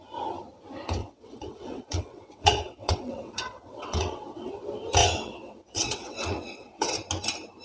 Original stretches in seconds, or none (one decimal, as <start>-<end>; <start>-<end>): 0.0-1.0; 4.5-5.0; 6.9-7.6